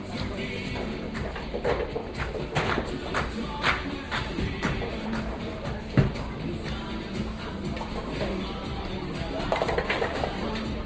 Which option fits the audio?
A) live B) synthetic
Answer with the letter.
A